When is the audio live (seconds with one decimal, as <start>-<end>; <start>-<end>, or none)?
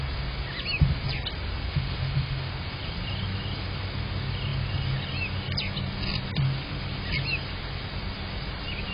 0.0-1.7; 2.5-8.9